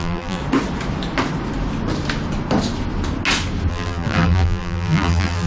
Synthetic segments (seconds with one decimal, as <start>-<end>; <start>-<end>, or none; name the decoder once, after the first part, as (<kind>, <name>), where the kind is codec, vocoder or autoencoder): 0.0-0.4 (vocoder, BigVGAN v2); 3.7-5.5